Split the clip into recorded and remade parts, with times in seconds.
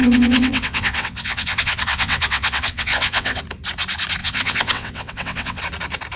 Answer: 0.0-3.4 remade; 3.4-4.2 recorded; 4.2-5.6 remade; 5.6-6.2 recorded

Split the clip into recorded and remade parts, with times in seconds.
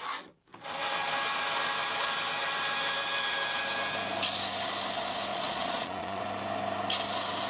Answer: 0.0-5.3 recorded; 5.3-6.2 remade; 6.2-7.5 recorded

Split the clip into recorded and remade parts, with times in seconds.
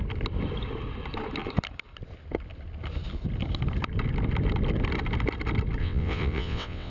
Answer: 0.0-5.8 recorded; 5.8-6.9 remade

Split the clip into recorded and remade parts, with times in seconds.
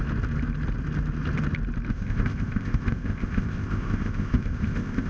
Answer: 0.0-1.9 recorded; 1.9-5.1 remade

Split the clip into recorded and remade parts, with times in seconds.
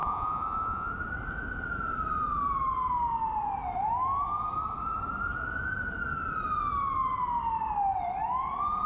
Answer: 0.0-0.9 remade; 0.9-8.9 recorded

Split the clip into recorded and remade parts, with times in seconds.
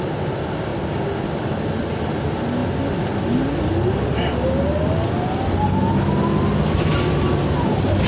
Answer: 0.0-8.1 recorded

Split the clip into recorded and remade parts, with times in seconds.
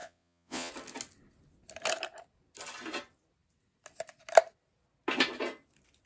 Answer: 0.0-0.7 remade; 0.7-6.1 recorded